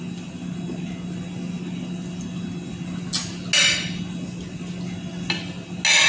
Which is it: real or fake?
real